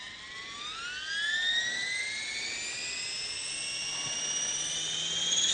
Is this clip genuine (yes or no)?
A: yes